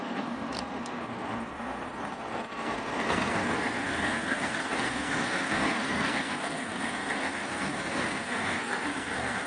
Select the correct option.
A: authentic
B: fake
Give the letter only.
B